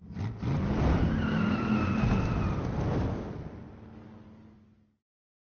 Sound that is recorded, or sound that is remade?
recorded